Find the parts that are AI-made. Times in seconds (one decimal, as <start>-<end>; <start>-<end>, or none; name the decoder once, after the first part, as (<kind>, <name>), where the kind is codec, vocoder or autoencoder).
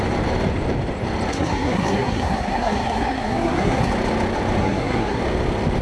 1.3-3.9 (codec, SNAC); 4.6-5.2